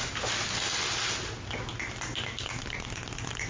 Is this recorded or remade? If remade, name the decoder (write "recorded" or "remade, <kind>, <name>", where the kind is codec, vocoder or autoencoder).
recorded